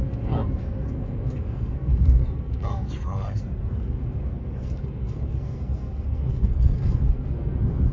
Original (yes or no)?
no